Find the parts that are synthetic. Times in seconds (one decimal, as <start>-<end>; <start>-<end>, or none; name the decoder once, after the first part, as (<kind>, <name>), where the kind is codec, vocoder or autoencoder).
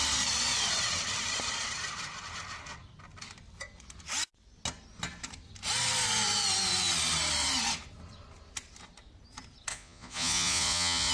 9.7-11.1 (vocoder, Vocos)